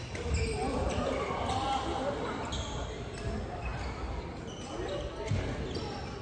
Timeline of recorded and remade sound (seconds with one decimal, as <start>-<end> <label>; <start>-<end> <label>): 0.0-0.6 recorded; 0.6-1.1 remade; 1.1-3.7 recorded; 3.7-4.7 remade; 4.7-6.2 recorded